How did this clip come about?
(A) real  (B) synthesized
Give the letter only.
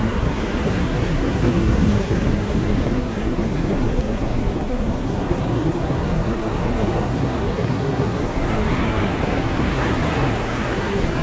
B